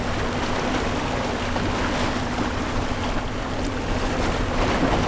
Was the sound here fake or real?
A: real